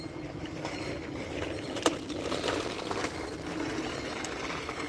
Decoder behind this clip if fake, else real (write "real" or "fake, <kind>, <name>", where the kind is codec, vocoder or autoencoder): fake, vocoder, BigVGAN v2